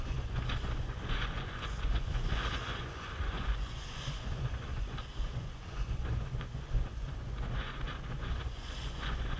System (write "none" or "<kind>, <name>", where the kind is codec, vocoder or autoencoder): vocoder, Vocos